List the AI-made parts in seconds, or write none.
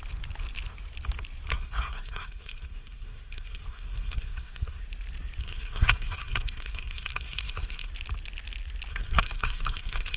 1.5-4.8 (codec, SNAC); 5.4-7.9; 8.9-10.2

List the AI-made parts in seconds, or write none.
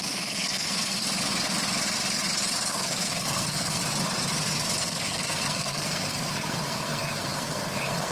0.0-1.0 (codec, SNAC); 2.7-3.8; 4.8-8.1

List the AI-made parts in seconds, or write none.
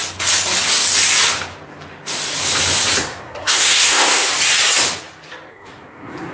3.0-4.3 (codec, SNAC); 5.5-6.3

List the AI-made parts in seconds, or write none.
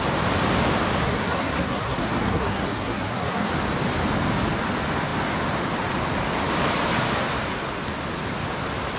1.0-3.5 (codec, SNAC)